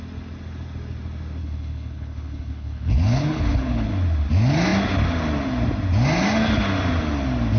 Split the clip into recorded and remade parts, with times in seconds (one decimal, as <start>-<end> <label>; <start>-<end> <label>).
0.0-1.4 recorded; 1.4-3.9 remade; 3.9-7.6 recorded